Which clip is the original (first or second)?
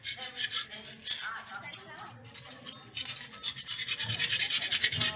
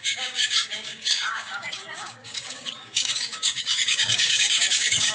first